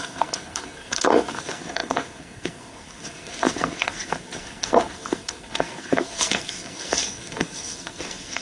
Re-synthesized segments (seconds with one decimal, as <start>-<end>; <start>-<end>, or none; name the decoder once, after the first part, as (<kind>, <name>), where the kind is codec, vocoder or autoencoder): 0.0-8.4 (codec, SNAC)